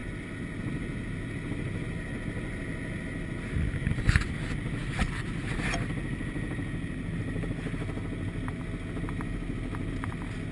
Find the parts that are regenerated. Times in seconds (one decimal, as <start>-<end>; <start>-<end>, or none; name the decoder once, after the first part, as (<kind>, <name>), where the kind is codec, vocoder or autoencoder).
none